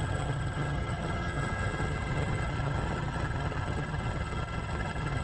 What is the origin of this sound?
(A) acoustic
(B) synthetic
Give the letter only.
B